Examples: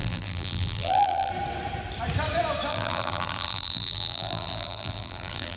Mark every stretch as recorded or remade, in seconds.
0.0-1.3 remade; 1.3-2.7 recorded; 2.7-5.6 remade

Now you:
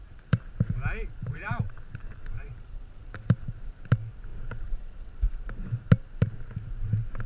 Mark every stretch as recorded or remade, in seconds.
0.0-0.5 remade; 0.5-1.2 recorded; 1.2-3.7 remade; 3.7-4.3 recorded; 4.3-5.9 remade; 5.9-7.3 recorded

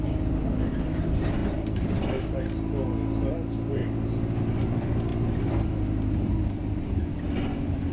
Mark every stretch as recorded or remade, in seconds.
0.0-1.4 remade; 1.4-3.3 recorded; 3.3-3.8 remade; 3.8-4.4 recorded; 4.4-5.1 remade; 5.1-7.9 recorded

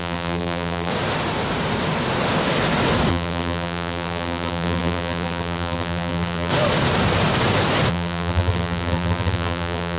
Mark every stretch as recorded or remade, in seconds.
0.0-0.9 remade; 0.9-3.1 recorded; 3.1-6.5 remade; 6.5-7.9 recorded; 7.9-10.0 remade

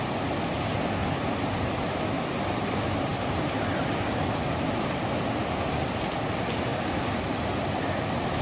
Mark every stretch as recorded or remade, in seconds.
0.0-1.0 recorded; 1.0-2.0 remade; 2.0-3.1 recorded; 3.1-3.6 remade; 3.6-6.7 recorded; 6.7-7.6 remade; 7.6-8.4 recorded

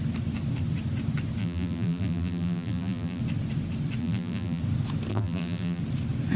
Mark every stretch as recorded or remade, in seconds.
0.0-1.4 recorded; 1.4-3.2 remade; 3.2-4.0 recorded; 4.0-4.6 remade; 4.6-5.1 recorded; 5.1-5.8 remade; 5.8-6.4 recorded

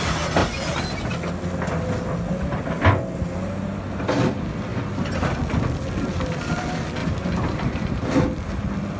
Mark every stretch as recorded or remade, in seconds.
0.0-7.0 recorded; 7.0-8.1 remade; 8.1-9.0 recorded